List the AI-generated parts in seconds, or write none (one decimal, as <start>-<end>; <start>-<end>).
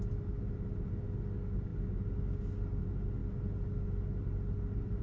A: none